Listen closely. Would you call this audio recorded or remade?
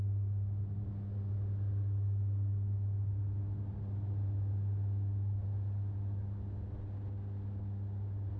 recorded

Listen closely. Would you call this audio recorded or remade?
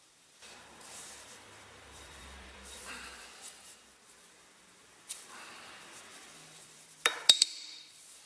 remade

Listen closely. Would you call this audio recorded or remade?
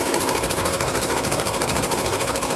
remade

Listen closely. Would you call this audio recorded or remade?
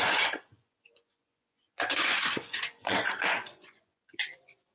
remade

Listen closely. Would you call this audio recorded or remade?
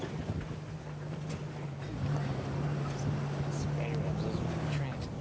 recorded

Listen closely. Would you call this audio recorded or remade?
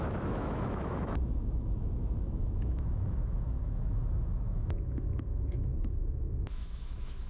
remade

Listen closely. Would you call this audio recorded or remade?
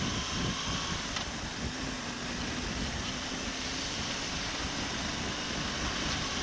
recorded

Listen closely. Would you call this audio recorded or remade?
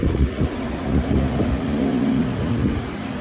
remade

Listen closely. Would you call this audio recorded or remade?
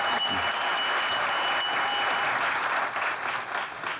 recorded